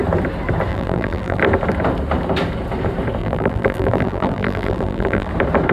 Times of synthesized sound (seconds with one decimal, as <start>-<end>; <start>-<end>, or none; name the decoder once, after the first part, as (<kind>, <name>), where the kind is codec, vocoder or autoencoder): 0.7-1.4 (vocoder, BigVGAN v2); 3.2-5.3